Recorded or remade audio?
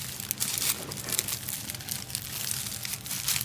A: recorded